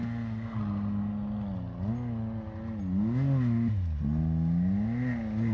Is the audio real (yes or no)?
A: yes